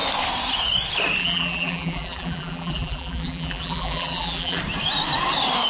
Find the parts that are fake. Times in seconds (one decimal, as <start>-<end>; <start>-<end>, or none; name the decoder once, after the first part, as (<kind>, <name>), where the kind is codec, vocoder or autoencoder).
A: 1.2-4.6 (vocoder, BigVGAN v2)